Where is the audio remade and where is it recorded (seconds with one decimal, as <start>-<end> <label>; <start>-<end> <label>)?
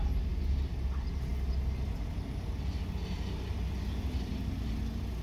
0.0-5.2 recorded